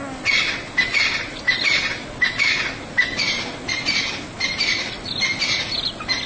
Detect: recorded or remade recorded